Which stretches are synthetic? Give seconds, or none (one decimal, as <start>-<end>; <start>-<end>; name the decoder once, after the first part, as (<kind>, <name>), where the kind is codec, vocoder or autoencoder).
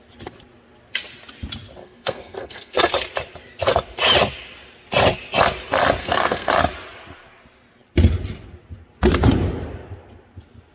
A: 1.8-2.9 (codec, SNAC); 6.0-6.5